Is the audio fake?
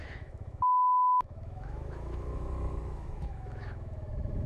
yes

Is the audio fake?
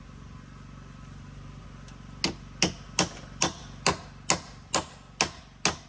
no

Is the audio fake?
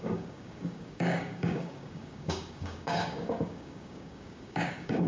yes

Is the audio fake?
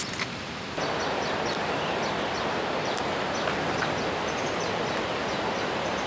yes